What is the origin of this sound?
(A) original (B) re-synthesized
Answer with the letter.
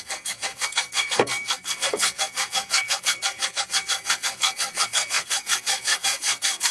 B